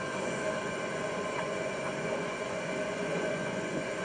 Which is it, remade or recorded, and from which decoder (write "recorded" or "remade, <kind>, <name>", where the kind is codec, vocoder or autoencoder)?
remade, vocoder, Vocos